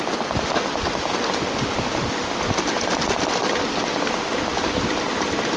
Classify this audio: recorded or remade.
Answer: recorded